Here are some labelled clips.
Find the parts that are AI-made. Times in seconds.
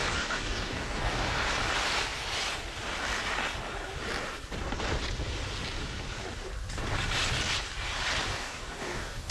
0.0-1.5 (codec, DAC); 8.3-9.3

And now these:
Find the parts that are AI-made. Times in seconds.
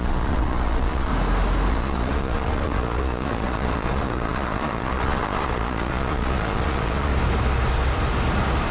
0.0-1.1 (vocoder, Vocos); 1.7-7.1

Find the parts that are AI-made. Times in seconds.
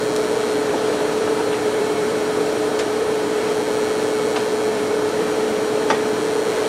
0.6-3.5 (vocoder, BigVGAN v2); 4.7-6.2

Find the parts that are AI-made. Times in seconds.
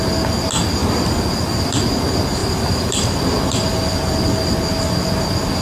0.8-1.8 (vocoder, BigVGAN v2); 2.4-4.5